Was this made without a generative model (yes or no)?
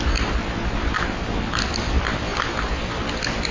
yes